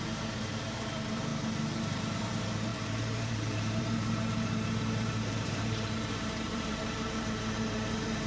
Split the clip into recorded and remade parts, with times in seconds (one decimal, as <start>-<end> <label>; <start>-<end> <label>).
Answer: 0.0-1.3 remade; 1.3-1.9 recorded; 1.9-8.3 remade